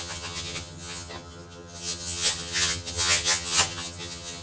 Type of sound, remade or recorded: remade